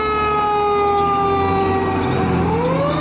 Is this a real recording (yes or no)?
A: yes